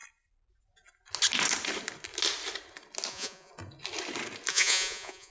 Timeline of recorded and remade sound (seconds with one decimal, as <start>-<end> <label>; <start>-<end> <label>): 0.0-3.1 recorded; 3.1-3.5 remade; 3.5-4.5 recorded; 4.5-5.3 remade